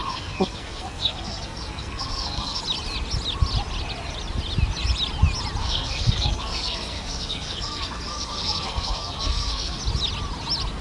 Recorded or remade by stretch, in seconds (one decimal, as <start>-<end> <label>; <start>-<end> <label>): 0.0-2.6 remade; 2.6-5.6 recorded; 5.6-9.8 remade; 9.8-10.8 recorded